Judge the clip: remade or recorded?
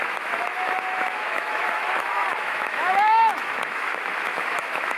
remade